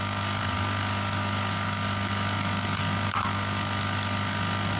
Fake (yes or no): yes